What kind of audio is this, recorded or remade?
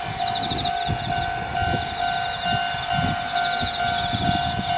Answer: recorded